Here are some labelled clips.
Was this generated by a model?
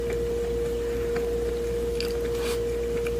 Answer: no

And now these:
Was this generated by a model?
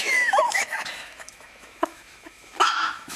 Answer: yes